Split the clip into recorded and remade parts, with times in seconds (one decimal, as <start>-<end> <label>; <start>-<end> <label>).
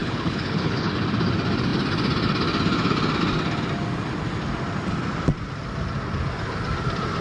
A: 0.0-0.9 remade; 0.9-7.2 recorded